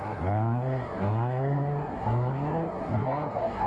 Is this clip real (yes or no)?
no